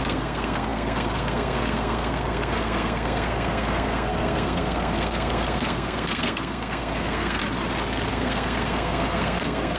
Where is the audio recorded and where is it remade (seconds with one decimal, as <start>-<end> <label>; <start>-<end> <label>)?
0.0-7.4 remade; 7.4-8.1 recorded; 8.1-9.8 remade